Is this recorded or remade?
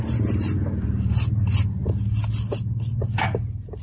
recorded